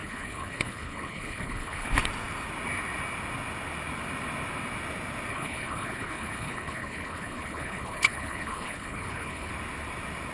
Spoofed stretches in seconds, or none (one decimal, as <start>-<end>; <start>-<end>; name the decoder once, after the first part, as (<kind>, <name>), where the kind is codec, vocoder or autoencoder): 0.0-1.9 (codec, HILCodec); 5.3-9.5